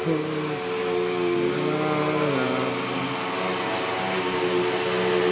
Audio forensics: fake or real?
real